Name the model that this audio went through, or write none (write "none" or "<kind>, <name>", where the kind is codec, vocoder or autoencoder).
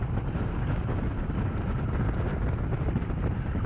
none